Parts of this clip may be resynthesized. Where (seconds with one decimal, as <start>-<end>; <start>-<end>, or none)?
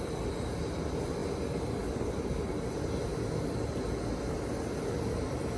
none